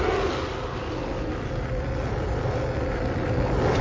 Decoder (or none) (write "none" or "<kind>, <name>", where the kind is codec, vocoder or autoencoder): none